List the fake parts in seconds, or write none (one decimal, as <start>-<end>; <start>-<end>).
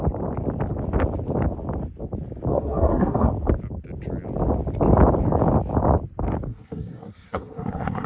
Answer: 2.5-3.3; 6.5-8.1